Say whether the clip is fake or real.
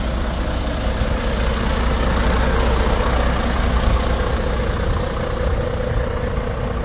real